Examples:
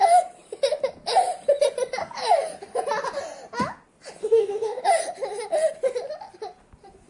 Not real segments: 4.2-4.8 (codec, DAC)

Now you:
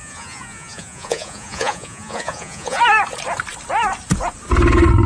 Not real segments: 0.0-2.8 (vocoder, Vocos)

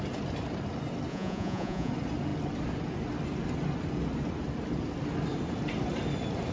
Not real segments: 1.1-1.9 (vocoder, Vocos)

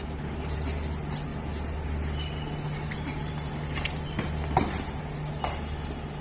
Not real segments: none

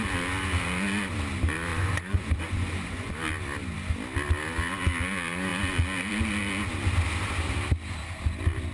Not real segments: 1.7-3.1 (vocoder, Vocos)

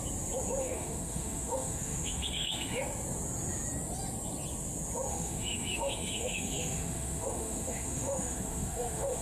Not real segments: 0.6-2.8 (autoencoder, DAC-VAE); 5.1-9.2

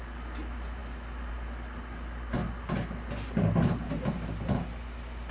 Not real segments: none